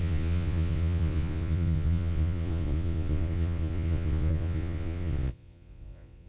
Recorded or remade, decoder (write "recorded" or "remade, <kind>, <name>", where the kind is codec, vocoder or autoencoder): remade, vocoder, Vocos